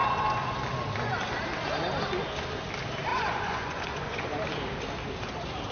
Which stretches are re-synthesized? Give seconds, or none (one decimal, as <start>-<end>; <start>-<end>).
3.1-4.3